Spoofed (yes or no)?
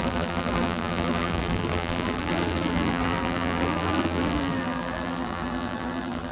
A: yes